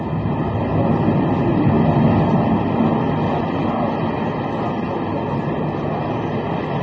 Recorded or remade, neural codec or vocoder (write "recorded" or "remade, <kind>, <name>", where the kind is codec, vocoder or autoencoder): recorded